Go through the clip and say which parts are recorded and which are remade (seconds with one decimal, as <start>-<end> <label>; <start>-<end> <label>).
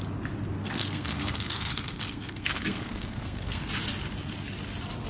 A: 0.0-0.6 recorded; 0.6-3.7 remade; 3.7-5.1 recorded